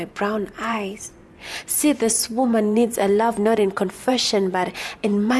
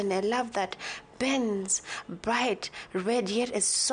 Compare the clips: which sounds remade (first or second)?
first